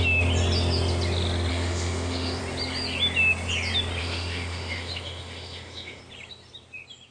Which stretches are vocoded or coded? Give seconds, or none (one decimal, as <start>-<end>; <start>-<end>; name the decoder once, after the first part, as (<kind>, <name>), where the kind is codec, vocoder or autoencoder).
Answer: 1.5-2.4 (autoencoder, DAC-VAE); 4.0-6.0